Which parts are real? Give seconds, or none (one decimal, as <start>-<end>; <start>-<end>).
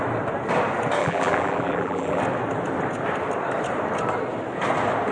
0.0-1.0; 2.2-5.1